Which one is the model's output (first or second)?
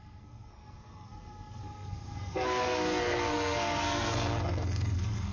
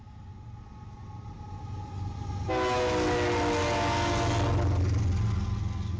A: first